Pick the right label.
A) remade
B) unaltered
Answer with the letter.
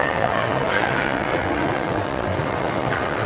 A